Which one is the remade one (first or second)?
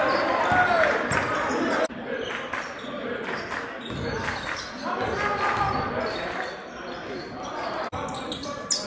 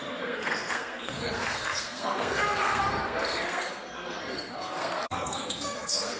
second